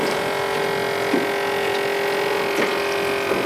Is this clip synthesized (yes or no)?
no